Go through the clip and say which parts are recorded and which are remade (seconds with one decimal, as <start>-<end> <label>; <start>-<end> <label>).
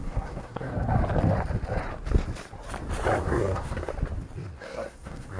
0.0-1.0 remade; 1.0-3.2 recorded; 3.2-3.9 remade; 3.9-4.6 recorded; 4.6-5.4 remade